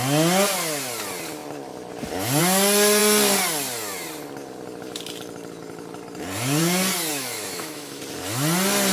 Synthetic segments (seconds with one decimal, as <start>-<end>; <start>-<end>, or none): 7.1-8.0